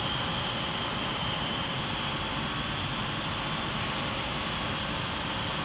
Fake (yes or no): no